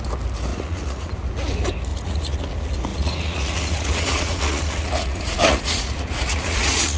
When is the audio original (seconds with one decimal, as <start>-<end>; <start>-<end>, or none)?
0.0-0.5; 1.1-1.9; 2.4-2.9